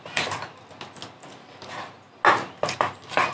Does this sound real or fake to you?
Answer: real